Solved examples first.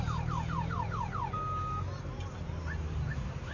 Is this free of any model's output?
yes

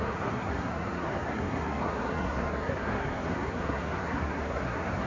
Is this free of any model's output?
no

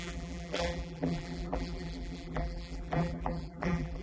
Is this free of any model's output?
no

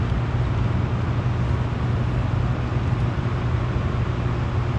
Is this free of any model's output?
yes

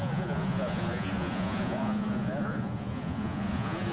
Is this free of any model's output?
no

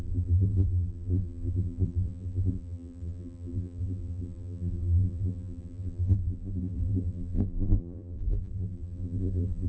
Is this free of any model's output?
no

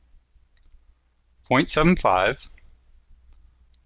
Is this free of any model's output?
yes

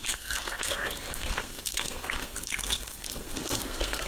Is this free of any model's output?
no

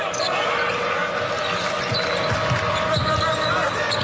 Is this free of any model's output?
yes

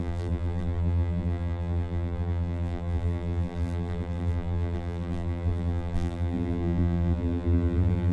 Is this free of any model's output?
no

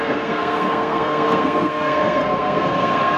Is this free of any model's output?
no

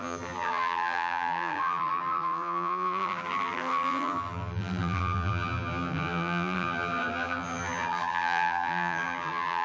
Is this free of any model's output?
no